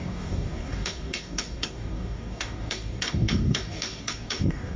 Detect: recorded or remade remade